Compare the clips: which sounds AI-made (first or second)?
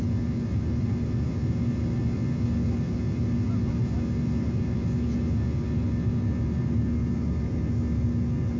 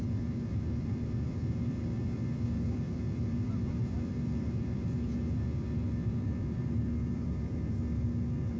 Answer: second